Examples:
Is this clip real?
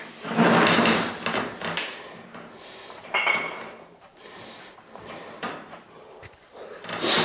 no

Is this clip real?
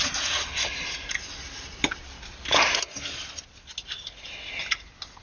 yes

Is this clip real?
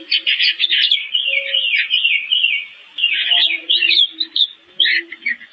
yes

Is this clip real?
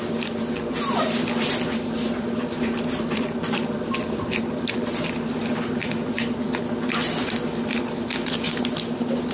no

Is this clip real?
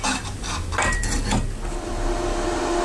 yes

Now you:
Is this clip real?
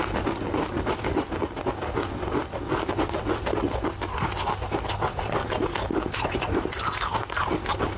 yes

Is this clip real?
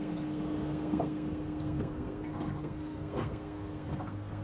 no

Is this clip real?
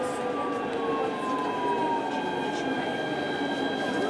yes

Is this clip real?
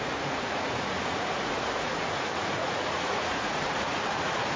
no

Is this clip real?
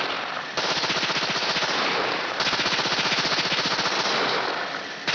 yes